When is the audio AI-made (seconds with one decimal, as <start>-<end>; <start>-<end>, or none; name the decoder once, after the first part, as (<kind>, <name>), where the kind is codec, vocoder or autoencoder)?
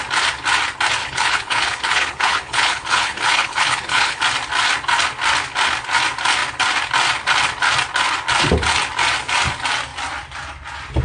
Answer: 1.0-4.2 (codec, HILCodec)